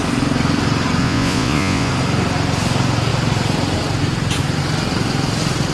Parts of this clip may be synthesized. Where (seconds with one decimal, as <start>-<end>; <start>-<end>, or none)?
1.0-1.9